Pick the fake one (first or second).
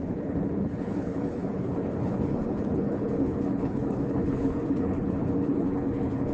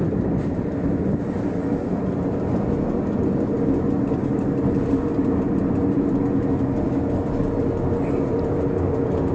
first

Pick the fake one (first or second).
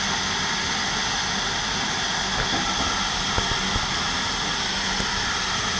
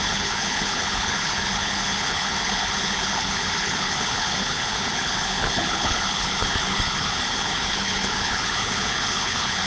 second